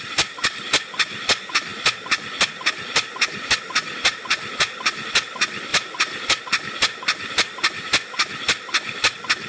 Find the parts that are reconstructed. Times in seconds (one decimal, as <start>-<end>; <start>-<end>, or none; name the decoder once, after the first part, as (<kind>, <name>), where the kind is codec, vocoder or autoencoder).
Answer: 5.7-6.4 (vocoder, BigVGAN v2)